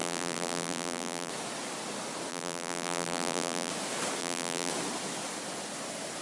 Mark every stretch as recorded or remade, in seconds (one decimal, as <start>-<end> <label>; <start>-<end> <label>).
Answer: 0.0-1.3 remade; 1.3-2.3 recorded; 2.3-3.7 remade; 3.7-4.2 recorded; 4.2-4.7 remade; 4.7-6.2 recorded